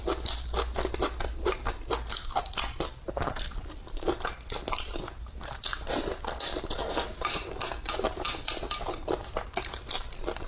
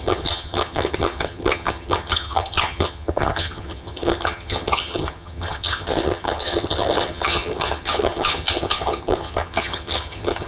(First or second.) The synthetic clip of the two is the second